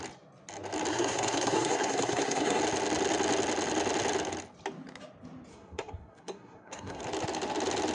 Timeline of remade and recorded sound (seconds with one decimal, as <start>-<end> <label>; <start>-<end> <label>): 0.0-0.9 recorded; 0.9-2.6 remade; 2.6-5.5 recorded; 5.5-7.0 remade; 7.0-7.9 recorded